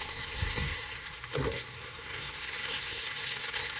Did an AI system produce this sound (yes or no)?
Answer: yes